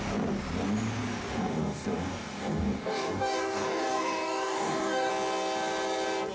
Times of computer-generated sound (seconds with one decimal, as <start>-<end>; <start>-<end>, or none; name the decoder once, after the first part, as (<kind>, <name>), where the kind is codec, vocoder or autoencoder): 1.3-5.1 (codec, DAC)